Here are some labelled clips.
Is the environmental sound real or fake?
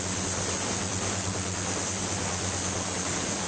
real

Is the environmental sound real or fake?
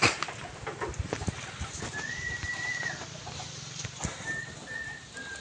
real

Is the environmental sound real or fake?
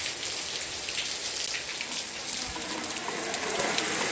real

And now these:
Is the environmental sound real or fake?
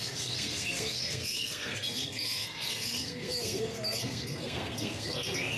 fake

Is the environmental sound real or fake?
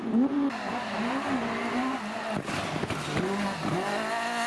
real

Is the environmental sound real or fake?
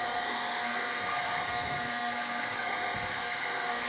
fake